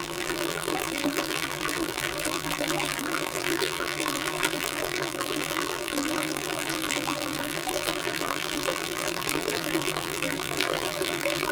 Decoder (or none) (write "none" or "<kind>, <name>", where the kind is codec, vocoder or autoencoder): vocoder, BigVGAN v2